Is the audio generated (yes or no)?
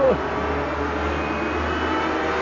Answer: no